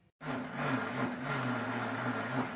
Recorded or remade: recorded